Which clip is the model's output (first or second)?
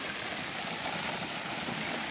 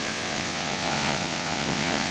second